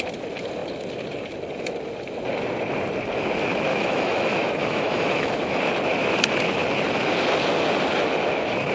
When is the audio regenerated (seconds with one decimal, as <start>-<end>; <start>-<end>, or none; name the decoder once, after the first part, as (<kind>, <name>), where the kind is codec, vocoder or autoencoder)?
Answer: 3.7-5.6 (autoencoder, DAC-VAE)